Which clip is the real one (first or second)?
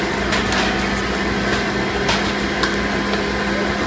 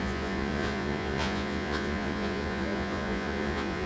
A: first